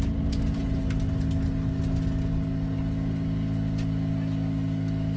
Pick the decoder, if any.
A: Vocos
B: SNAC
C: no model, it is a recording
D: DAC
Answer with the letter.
C